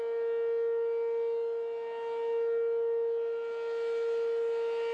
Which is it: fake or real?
real